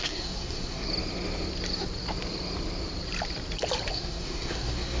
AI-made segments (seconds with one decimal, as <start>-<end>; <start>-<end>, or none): 0.0-0.9; 3.9-5.0